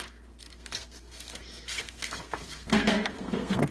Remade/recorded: remade